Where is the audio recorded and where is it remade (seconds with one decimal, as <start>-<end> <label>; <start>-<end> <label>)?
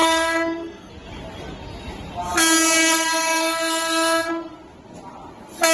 0.0-0.9 remade; 0.9-2.8 recorded; 2.8-4.3 remade; 4.3-5.7 recorded